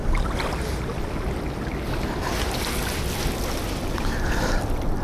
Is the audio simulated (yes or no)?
no